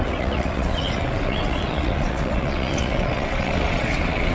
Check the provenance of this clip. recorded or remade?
remade